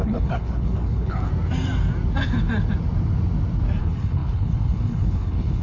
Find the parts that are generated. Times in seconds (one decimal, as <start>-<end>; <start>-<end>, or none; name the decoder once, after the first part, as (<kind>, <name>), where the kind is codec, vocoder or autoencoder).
0.0-1.3 (codec, HILCodec); 3.8-5.6